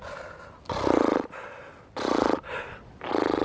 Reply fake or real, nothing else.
real